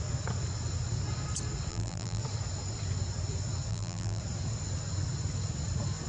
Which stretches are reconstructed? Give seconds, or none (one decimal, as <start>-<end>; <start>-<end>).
1.7-2.2; 3.7-4.2